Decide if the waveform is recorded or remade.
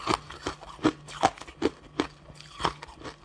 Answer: recorded